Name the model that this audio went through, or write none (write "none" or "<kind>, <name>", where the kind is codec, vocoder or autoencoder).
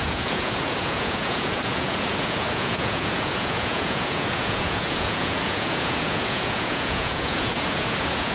vocoder, Vocos